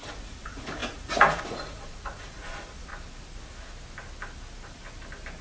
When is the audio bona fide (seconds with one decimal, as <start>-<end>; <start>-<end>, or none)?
2.9-5.4